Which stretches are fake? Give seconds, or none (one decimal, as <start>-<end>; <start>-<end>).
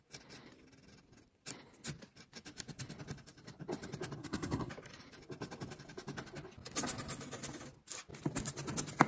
4.2-4.7